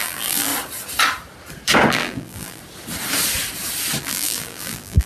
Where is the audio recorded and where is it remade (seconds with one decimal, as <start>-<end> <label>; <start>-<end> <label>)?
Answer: 0.0-0.5 remade; 0.5-1.9 recorded; 1.9-2.6 remade; 2.6-4.0 recorded; 4.0-5.1 remade

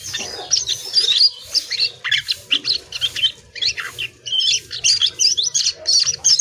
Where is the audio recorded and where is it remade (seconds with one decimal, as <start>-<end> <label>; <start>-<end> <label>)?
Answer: 0.0-5.0 recorded; 5.0-5.6 remade; 5.6-6.4 recorded

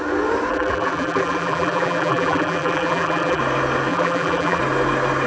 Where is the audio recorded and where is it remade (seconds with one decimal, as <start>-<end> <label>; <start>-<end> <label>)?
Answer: 0.0-0.5 recorded; 0.5-3.4 remade; 3.4-3.9 recorded; 3.9-4.6 remade; 4.6-5.3 recorded

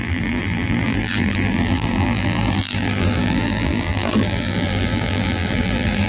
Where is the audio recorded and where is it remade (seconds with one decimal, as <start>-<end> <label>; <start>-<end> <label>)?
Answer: 0.0-6.1 remade

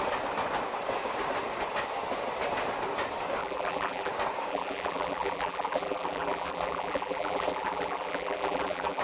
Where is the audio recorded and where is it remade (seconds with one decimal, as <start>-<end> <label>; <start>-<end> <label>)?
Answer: 0.0-3.4 recorded; 3.4-4.1 remade; 4.1-4.5 recorded; 4.5-9.0 remade

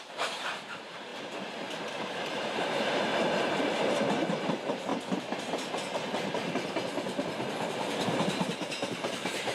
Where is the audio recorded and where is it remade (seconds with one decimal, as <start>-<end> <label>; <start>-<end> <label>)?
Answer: 0.0-3.1 remade; 3.1-3.6 recorded; 3.6-4.9 remade; 4.9-8.0 recorded; 8.0-9.5 remade

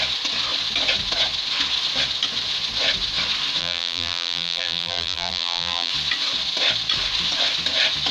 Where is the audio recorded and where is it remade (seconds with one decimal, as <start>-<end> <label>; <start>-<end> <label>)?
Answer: 0.0-3.6 recorded; 3.6-5.9 remade; 5.9-8.1 recorded

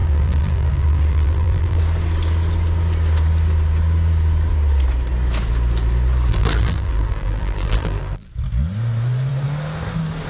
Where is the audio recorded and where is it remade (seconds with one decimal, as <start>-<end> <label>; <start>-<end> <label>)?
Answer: 0.0-1.8 remade; 1.8-6.3 recorded; 6.3-8.3 remade; 8.3-10.3 recorded